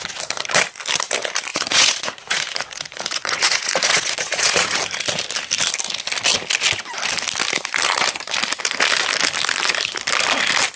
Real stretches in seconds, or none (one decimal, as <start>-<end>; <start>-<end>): 0.0-1.5; 4.8-10.8